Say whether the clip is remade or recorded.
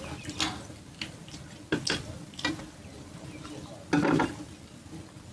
recorded